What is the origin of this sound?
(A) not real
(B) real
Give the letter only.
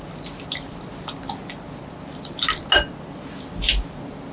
B